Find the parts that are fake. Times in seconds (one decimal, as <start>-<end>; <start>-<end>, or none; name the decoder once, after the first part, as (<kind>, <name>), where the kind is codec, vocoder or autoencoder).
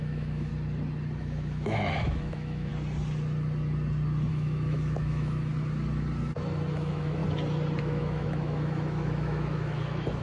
0.0-0.5 (autoencoder, DAC-VAE); 1.2-2.7; 4.3-5.5; 6.7-7.2; 7.8-10.2